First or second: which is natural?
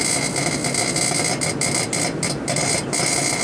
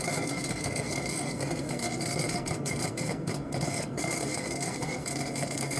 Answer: first